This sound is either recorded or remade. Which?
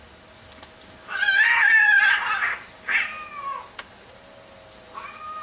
recorded